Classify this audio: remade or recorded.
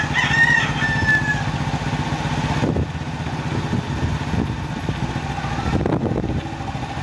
recorded